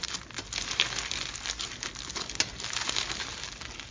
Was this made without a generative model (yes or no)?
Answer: yes